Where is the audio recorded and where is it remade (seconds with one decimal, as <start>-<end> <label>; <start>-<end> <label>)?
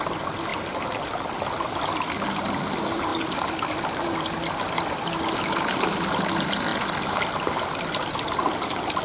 0.0-9.0 recorded